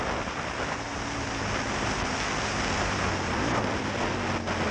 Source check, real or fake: real